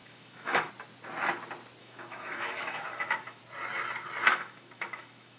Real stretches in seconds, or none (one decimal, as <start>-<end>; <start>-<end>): 0.7-1.8; 3.4-4.3